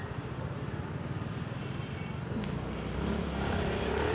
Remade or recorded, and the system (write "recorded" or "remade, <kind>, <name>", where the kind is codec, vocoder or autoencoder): recorded